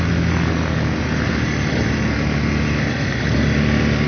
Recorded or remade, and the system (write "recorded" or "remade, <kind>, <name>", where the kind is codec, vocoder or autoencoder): recorded